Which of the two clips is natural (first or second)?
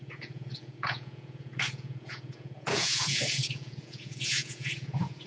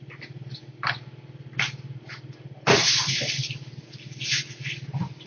second